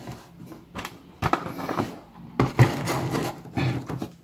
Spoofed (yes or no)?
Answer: no